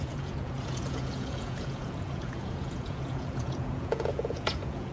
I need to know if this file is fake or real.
fake